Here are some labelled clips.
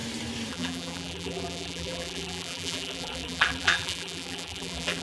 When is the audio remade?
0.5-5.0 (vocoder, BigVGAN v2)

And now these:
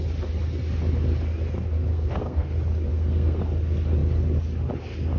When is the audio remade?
1.9-2.5 (codec, SNAC); 2.9-3.4